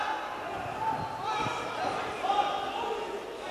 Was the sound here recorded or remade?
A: recorded